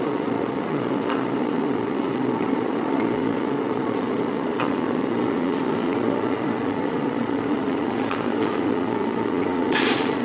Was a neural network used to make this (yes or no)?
yes